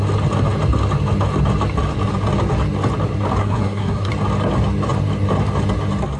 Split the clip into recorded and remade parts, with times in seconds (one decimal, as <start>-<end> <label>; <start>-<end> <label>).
0.0-3.4 recorded; 3.4-4.1 remade; 4.1-6.2 recorded